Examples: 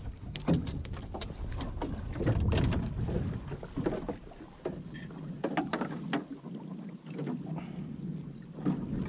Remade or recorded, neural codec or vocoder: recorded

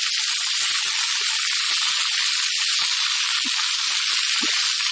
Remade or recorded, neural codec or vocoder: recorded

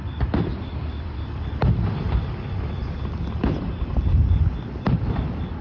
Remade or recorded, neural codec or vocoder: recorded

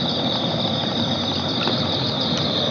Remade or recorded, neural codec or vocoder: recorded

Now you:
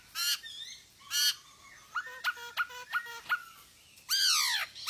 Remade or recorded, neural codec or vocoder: recorded